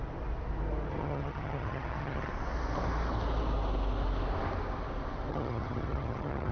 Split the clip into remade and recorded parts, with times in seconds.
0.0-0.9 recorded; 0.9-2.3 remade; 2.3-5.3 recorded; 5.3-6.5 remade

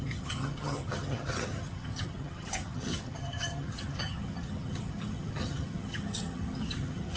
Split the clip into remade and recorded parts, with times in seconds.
0.0-7.2 remade

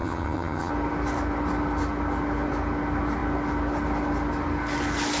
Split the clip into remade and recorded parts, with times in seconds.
0.0-0.7 remade; 0.7-5.2 recorded